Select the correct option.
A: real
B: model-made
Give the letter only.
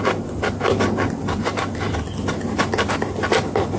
A